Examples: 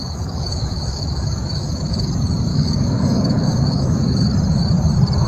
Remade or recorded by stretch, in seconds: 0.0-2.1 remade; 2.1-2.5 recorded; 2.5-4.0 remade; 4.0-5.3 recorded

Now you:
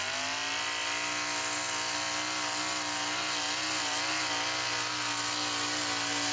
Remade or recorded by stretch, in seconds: 0.0-6.3 recorded

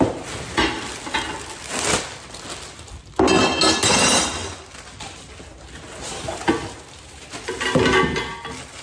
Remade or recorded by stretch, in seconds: 0.0-8.8 recorded

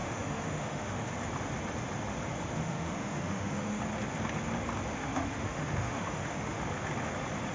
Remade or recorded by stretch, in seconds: 0.0-1.1 remade; 1.1-2.6 recorded; 2.6-3.8 remade; 3.8-4.9 recorded; 4.9-6.6 remade; 6.6-7.5 recorded

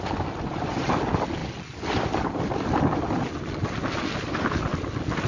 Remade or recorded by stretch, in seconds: 0.0-5.3 recorded

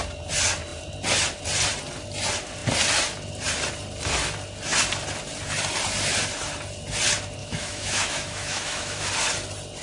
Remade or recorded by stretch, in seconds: 0.0-7.4 recorded; 7.4-9.1 remade; 9.1-9.8 recorded

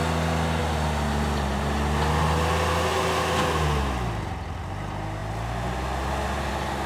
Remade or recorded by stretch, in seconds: 0.0-6.9 recorded

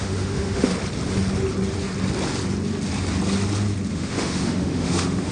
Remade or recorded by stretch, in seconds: 0.0-0.7 remade; 0.7-3.9 recorded; 3.9-5.3 remade